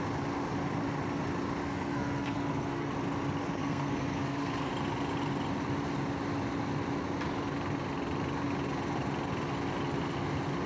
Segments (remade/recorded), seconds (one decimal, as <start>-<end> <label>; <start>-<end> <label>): 0.0-1.6 recorded; 1.6-2.9 remade; 2.9-3.6 recorded; 3.6-4.7 remade; 4.7-10.7 recorded